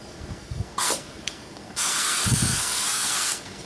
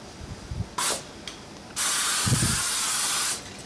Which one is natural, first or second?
second